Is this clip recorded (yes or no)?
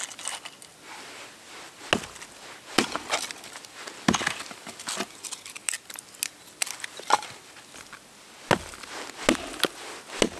yes